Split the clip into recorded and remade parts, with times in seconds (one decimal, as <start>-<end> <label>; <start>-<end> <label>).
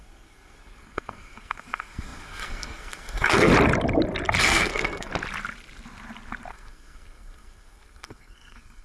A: 0.0-3.5 remade; 3.5-4.4 recorded; 4.4-5.1 remade; 5.1-6.5 recorded; 6.5-8.8 remade